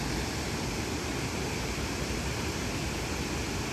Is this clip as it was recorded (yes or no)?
yes